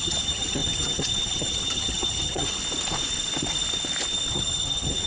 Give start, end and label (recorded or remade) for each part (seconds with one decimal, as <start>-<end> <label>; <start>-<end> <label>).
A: 0.0-2.6 remade; 2.6-4.3 recorded; 4.3-5.1 remade